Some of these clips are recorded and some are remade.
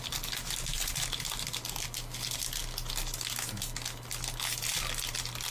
recorded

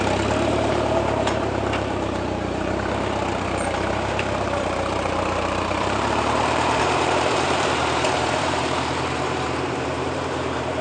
remade